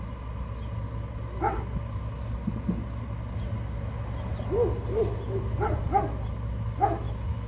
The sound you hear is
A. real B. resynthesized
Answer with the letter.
A